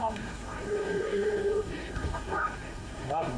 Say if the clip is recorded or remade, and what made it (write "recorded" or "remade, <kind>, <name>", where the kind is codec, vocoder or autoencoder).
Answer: remade, codec, SNAC